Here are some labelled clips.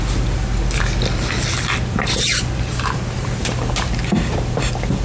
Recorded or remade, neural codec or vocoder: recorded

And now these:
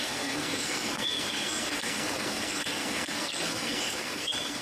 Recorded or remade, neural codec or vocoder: remade, codec, SNAC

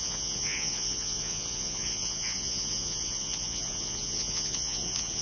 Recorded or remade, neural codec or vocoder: remade, vocoder, Vocos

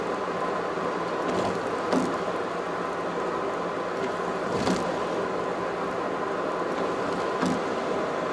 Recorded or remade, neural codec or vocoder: recorded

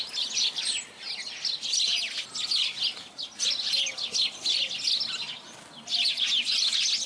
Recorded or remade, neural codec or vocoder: recorded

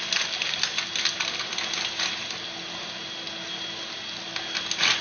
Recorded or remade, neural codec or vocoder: recorded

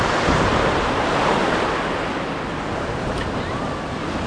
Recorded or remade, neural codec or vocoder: recorded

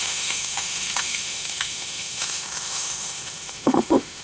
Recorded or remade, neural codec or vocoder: remade, autoencoder, DAC-VAE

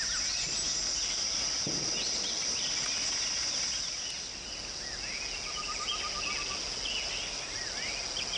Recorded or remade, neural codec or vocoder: recorded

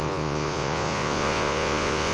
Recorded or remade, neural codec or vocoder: remade, vocoder, Vocos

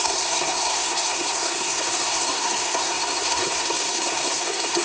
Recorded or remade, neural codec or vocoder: remade, codec, SNAC